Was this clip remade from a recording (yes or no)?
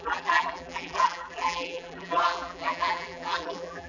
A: yes